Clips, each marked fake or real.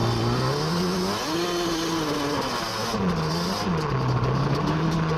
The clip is real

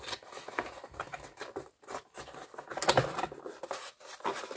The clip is real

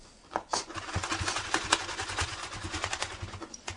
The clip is fake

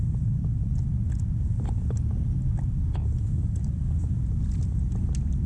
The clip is real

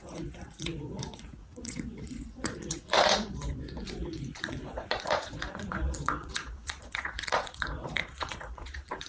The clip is fake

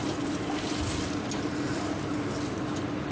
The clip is real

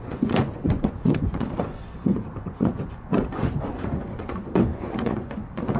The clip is fake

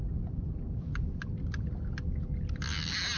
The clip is real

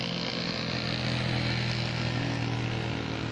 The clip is real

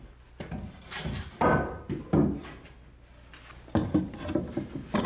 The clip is real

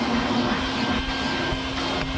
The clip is real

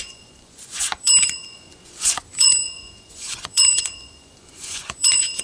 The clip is fake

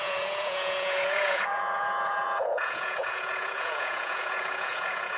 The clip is fake